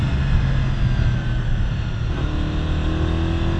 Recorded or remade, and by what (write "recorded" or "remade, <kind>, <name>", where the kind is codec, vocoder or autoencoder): recorded